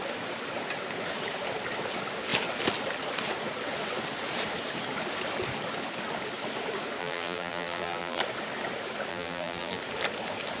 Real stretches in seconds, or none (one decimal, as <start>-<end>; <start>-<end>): 0.0-7.0; 8.2-9.1; 9.8-10.6